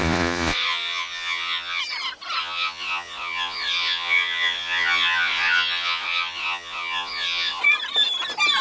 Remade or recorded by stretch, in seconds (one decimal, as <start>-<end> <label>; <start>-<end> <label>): 0.0-1.8 remade; 1.8-2.4 recorded; 2.4-7.6 remade; 7.6-8.6 recorded